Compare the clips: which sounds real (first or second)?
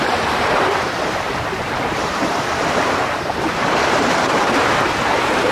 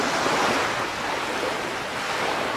second